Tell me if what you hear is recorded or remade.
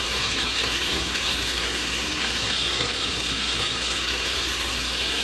remade